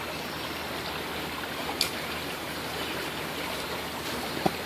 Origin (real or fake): real